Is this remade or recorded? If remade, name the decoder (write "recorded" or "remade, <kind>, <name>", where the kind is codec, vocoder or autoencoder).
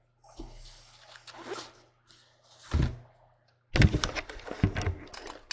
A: recorded